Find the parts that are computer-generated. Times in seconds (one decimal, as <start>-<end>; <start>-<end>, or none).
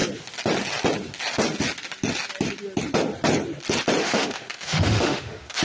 4.0-5.6